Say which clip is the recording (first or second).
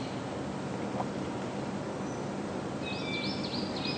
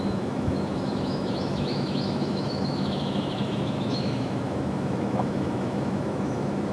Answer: first